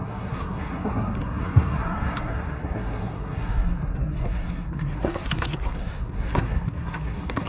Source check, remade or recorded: remade